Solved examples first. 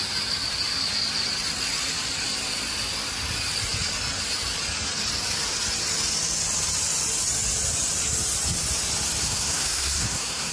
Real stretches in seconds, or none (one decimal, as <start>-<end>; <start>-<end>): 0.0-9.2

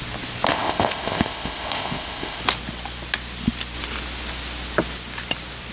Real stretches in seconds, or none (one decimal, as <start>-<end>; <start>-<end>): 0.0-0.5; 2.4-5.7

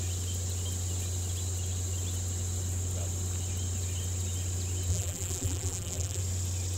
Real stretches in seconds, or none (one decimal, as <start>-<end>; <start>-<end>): 0.0-4.9; 6.2-6.8

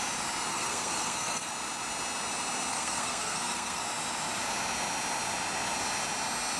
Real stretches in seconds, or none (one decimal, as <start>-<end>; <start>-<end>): 0.0-0.5; 1.5-2.7; 3.8-6.6